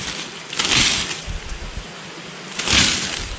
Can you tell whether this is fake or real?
real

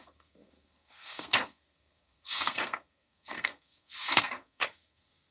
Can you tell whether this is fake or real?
fake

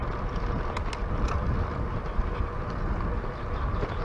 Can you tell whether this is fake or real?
real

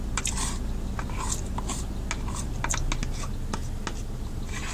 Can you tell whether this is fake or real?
real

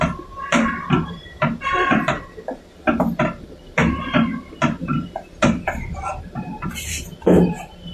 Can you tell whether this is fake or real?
fake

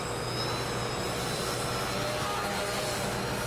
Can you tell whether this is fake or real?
real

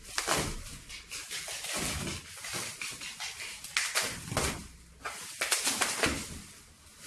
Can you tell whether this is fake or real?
real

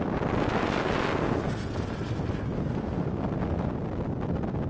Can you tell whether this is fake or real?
real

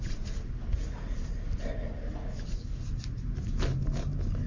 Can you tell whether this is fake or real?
real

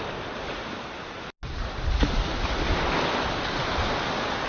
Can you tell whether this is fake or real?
real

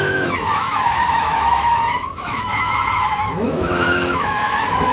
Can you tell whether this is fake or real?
fake